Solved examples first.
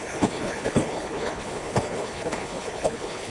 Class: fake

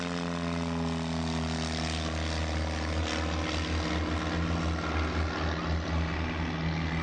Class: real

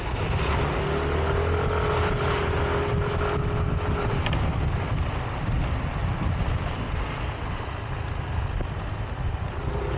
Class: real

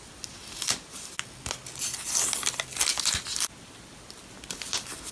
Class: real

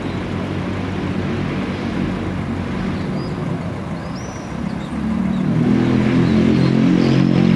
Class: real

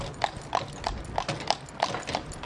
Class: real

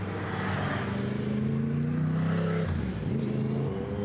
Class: real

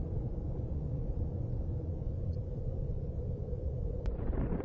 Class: fake